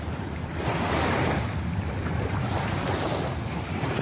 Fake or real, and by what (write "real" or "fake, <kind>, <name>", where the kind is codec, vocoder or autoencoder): fake, vocoder, BigVGAN v2